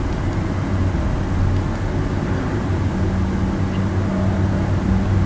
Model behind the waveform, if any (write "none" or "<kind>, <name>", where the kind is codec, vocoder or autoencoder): none